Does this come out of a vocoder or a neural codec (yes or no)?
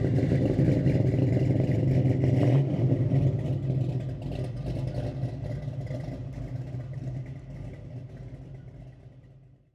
no